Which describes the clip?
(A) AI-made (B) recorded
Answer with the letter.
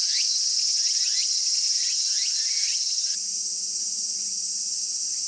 B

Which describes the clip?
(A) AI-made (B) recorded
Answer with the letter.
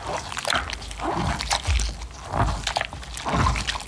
B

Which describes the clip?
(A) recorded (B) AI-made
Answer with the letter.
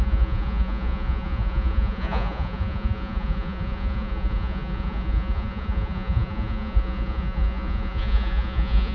B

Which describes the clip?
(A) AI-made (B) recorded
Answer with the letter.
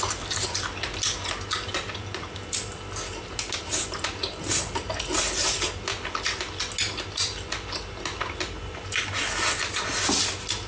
B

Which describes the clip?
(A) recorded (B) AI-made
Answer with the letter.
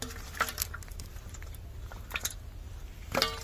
A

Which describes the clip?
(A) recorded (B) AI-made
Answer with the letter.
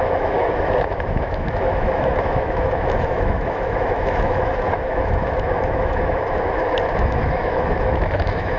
B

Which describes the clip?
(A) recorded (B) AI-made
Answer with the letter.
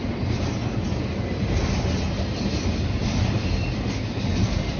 A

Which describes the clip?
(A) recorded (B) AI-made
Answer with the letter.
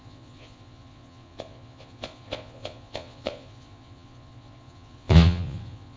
B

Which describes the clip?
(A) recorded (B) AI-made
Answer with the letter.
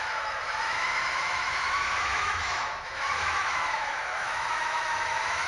B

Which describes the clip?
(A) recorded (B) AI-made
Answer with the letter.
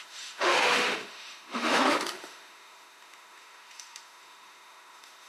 B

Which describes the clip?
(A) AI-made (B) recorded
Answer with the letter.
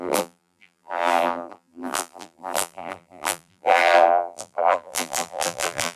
A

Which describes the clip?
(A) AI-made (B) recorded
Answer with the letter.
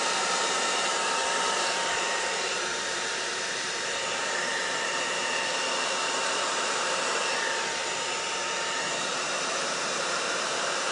A